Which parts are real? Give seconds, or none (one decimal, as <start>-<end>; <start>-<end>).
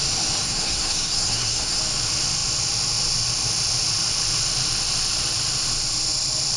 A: 0.0-0.4; 1.8-6.6